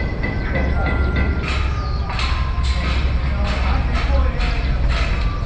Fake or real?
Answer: real